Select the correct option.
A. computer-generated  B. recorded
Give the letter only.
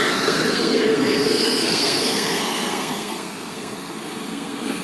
A